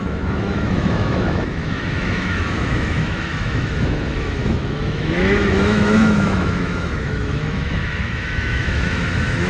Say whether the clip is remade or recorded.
remade